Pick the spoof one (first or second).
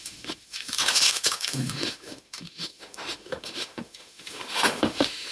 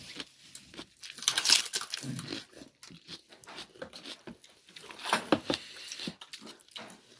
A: first